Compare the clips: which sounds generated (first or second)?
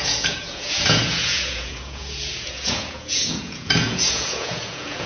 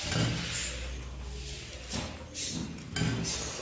first